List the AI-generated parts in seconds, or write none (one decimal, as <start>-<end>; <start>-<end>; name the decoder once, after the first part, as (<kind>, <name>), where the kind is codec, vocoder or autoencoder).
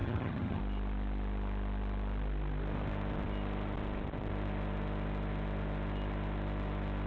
0.0-0.6 (vocoder, HiFi-GAN)